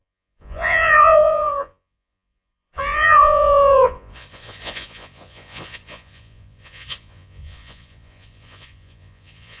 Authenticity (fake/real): fake